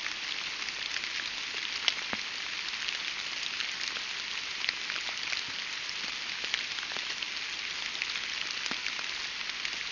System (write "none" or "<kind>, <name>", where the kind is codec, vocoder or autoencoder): none